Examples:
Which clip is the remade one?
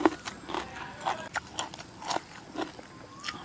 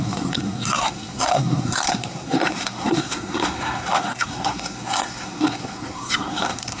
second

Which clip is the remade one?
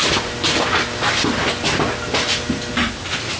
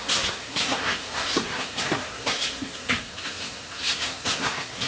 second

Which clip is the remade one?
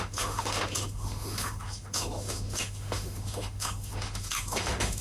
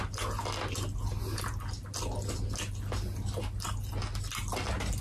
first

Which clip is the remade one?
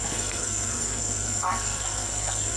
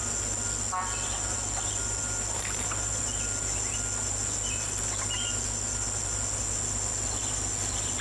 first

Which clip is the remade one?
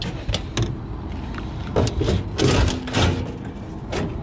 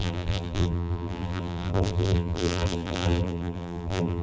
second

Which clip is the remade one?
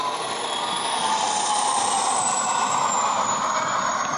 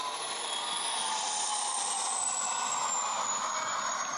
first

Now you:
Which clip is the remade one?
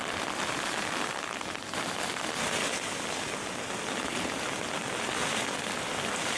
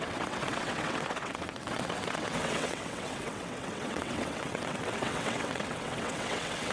second